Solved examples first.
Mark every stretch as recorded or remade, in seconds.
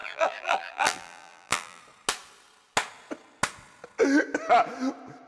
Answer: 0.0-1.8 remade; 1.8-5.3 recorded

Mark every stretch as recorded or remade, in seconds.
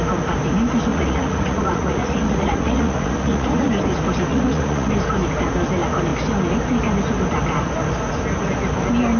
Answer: 0.0-0.9 recorded; 0.9-3.7 remade; 3.7-4.3 recorded; 4.3-4.9 remade; 4.9-9.2 recorded